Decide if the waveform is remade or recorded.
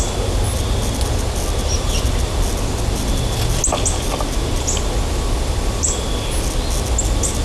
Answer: recorded